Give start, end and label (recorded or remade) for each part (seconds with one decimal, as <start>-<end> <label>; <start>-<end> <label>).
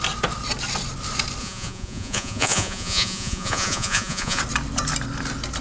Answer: 0.0-1.4 recorded; 1.4-4.4 remade; 4.4-5.6 recorded